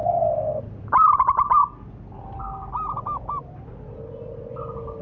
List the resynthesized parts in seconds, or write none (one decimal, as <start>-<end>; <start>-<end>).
none